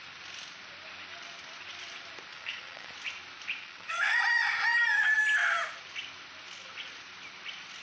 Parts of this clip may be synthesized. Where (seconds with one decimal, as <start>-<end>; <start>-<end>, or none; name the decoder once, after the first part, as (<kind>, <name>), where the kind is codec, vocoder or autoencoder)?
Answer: 2.3-2.9 (vocoder, WaveNeXt); 3.6-4.2